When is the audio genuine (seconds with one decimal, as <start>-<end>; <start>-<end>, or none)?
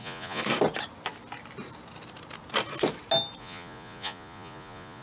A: 0.4-3.4